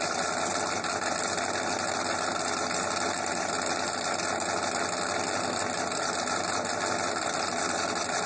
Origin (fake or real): real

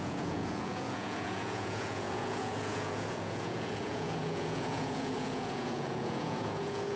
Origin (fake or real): fake